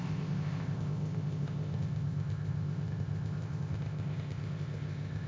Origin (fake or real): fake